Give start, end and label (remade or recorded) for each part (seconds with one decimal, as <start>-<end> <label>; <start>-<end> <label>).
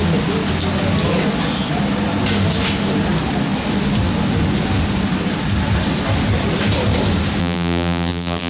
0.0-7.4 recorded; 7.4-8.5 remade